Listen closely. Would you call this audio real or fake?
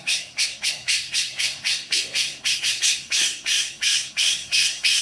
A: fake